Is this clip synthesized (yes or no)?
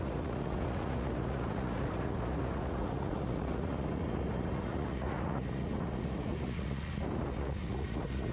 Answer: yes